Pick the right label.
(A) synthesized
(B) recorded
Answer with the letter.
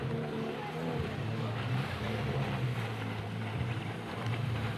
B